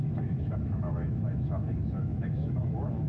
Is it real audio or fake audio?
fake